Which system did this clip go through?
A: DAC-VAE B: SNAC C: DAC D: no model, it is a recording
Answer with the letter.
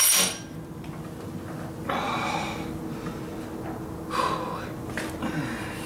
D